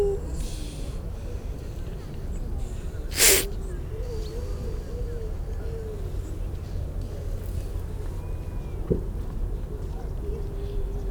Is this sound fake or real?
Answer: real